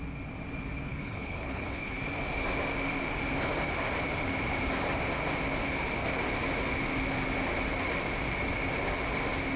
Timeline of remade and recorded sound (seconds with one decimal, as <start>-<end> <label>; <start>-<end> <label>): 0.0-0.9 recorded; 0.9-2.0 remade; 2.0-9.6 recorded